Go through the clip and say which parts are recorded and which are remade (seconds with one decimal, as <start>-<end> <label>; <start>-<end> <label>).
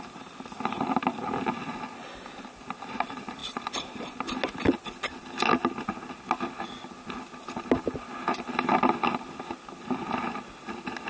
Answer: 0.0-11.1 recorded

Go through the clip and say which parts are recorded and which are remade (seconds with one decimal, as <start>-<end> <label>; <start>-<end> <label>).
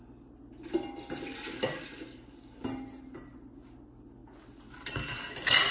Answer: 0.0-5.7 recorded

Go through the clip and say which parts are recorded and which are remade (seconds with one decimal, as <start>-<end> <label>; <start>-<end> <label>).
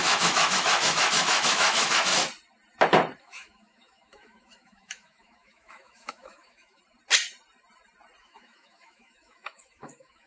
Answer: 0.0-2.1 remade; 2.1-3.2 recorded; 3.2-6.8 remade; 6.8-8.2 recorded; 8.2-10.3 remade